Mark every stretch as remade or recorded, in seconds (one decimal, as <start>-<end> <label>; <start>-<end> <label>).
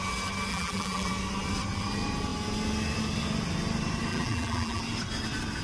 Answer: 0.0-0.5 recorded; 0.5-1.1 remade; 1.1-4.1 recorded; 4.1-4.8 remade; 4.8-5.6 recorded